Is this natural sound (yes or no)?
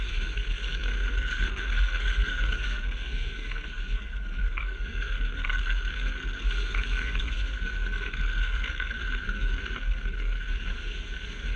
no